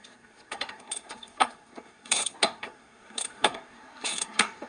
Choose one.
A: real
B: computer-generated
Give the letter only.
B